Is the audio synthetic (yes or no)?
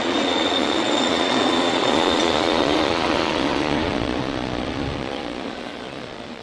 yes